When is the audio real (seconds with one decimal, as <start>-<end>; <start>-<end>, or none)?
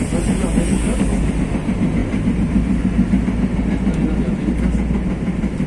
0.0-0.7; 1.3-5.7